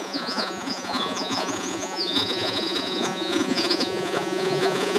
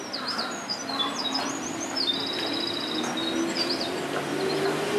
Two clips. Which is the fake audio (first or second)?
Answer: first